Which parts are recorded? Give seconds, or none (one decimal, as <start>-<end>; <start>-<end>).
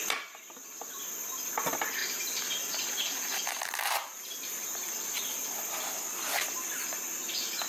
0.0-2.0; 4.4-7.7